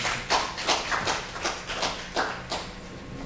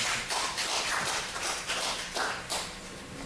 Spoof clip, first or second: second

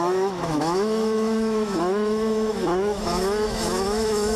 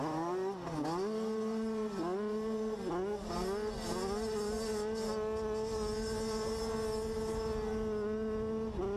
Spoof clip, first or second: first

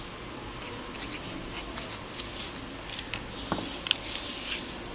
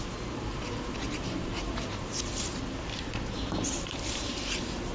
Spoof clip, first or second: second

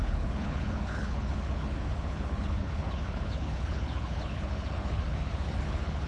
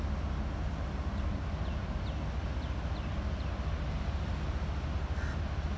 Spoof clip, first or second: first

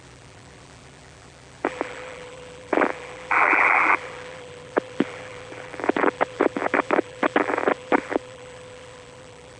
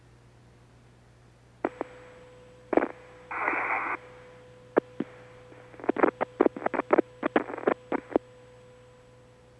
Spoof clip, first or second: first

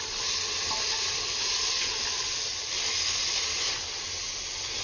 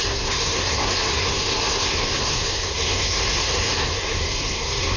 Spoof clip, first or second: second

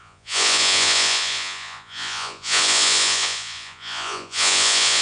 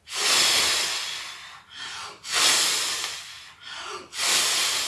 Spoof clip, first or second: first